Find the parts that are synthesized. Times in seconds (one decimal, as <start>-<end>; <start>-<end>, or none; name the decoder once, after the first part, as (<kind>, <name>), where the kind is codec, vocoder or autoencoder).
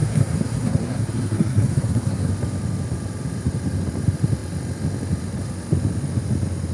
0.0-2.3 (codec, SNAC)